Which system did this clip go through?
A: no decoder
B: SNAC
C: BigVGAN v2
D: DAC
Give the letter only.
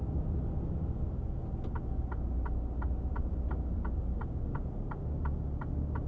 A